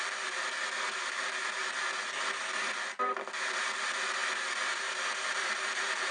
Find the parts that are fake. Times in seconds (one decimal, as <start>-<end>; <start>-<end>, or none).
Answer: none